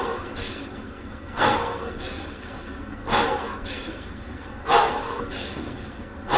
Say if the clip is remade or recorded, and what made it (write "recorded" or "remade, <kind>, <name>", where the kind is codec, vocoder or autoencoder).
remade, codec, SNAC